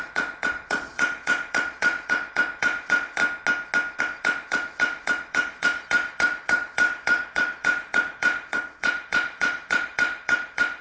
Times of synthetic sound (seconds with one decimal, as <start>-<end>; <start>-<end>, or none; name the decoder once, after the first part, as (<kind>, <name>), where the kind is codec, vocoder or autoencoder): 0.0-3.2 (vocoder, Vocos); 4.0-10.8